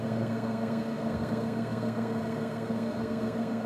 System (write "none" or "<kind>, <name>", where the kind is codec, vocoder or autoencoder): codec, SNAC